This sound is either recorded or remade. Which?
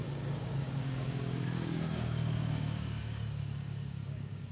remade